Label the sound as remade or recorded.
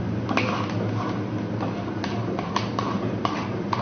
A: recorded